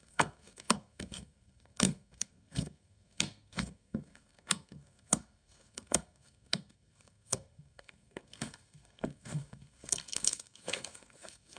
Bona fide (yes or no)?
no